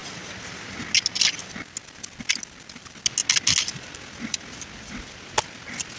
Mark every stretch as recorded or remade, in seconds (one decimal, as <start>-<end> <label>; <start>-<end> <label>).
0.0-6.0 recorded